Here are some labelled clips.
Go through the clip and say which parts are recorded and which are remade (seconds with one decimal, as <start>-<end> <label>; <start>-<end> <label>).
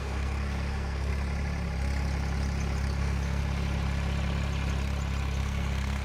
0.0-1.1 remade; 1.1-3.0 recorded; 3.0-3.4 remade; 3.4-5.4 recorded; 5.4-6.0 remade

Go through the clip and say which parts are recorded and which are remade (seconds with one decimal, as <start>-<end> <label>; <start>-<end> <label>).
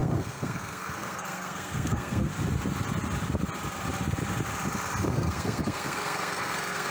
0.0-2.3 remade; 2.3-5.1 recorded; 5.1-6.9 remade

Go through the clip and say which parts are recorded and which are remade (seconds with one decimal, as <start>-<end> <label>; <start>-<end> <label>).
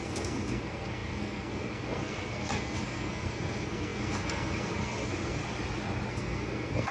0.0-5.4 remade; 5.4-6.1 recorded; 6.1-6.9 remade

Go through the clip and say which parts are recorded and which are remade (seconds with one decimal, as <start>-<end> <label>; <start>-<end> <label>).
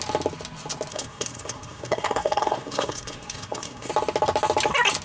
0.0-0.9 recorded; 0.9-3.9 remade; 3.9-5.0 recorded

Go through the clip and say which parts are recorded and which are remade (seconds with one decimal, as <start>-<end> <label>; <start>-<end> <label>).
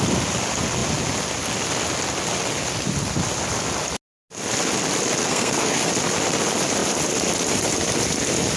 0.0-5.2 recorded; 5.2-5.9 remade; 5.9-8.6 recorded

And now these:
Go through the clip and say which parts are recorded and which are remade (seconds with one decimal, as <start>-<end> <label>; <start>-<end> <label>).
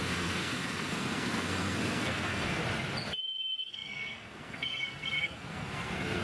0.0-2.6 remade; 2.6-3.2 recorded; 3.2-6.2 remade